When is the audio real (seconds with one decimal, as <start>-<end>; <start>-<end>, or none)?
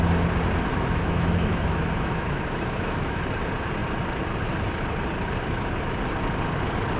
0.0-0.7; 3.2-7.0